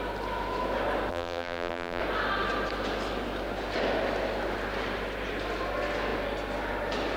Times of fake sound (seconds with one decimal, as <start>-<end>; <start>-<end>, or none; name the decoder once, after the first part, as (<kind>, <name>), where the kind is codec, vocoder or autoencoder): 1.1-2.0 (vocoder, BigVGAN v2)